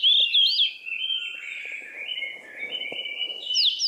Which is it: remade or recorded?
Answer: recorded